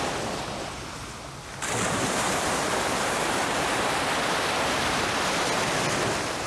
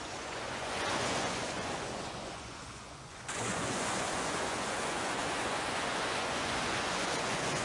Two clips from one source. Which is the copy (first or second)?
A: second